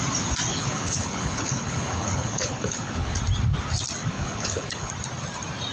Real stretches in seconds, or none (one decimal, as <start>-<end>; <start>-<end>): 0.0-0.5; 3.2-4.0; 4.9-5.7